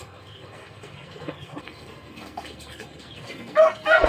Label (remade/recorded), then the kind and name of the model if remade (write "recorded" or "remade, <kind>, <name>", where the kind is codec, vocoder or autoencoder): remade, codec, SNAC